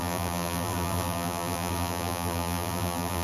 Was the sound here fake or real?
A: fake